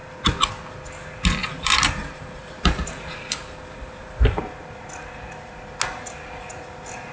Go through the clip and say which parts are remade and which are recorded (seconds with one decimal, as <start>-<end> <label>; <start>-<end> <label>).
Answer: 0.0-1.4 recorded; 1.4-4.4 remade; 4.4-7.1 recorded